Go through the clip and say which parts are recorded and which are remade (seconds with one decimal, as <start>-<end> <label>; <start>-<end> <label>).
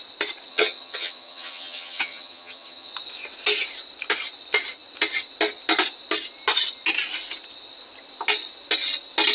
0.0-0.5 recorded; 0.5-2.9 remade; 2.9-9.3 recorded